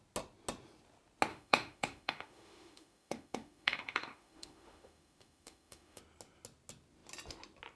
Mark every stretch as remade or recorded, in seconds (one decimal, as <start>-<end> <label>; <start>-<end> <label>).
0.0-1.3 recorded; 1.3-6.0 remade; 6.0-7.8 recorded